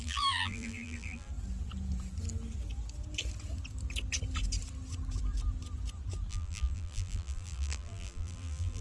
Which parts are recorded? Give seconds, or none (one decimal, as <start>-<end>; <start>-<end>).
1.3-6.3